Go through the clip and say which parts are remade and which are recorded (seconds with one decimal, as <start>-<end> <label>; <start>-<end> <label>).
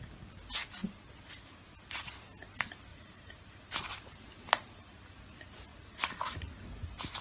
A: 0.0-2.9 recorded; 2.9-3.4 remade; 3.4-5.7 recorded; 5.7-6.7 remade; 6.7-7.2 recorded